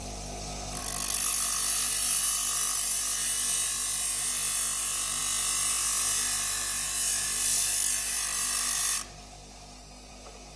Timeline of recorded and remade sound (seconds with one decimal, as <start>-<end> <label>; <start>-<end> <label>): 0.0-10.6 recorded